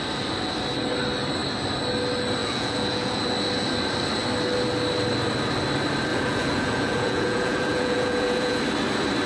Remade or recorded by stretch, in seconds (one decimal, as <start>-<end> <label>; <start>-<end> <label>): 0.0-2.4 recorded; 2.4-3.2 remade; 3.2-6.1 recorded; 6.1-8.6 remade; 8.6-9.3 recorded